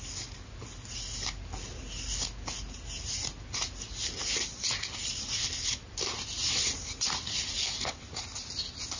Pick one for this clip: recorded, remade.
recorded